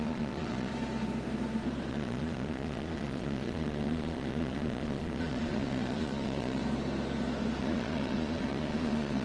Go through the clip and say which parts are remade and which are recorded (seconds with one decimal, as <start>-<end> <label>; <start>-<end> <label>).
0.0-0.7 remade; 0.7-1.9 recorded; 1.9-6.6 remade; 6.6-7.6 recorded; 7.6-9.2 remade